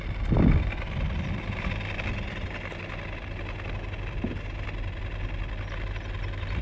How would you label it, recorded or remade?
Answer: recorded